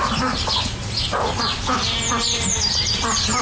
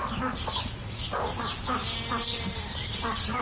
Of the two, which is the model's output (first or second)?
first